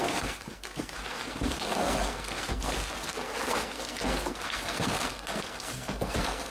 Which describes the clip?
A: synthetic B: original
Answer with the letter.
A